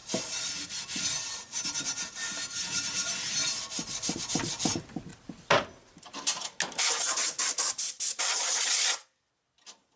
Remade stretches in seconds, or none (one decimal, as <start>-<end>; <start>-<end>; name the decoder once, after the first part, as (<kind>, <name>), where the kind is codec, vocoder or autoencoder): none